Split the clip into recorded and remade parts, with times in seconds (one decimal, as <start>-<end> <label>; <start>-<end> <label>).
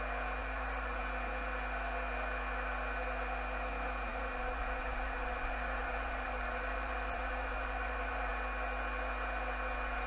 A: 0.0-0.4 recorded; 0.4-1.0 remade; 1.0-4.1 recorded; 4.1-8.3 remade; 8.3-10.1 recorded